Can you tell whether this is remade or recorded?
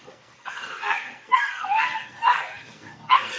remade